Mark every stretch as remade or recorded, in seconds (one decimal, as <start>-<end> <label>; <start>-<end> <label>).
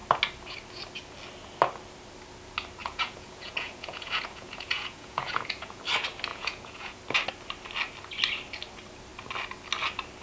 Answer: 0.0-2.8 recorded; 2.8-5.8 remade; 5.8-6.3 recorded; 6.3-7.0 remade; 7.0-10.2 recorded